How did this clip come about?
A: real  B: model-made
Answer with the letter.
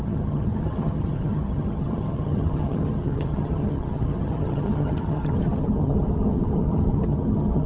B